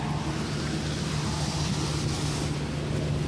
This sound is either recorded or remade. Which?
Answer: recorded